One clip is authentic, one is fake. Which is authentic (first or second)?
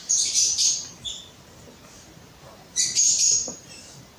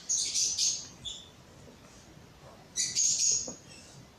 second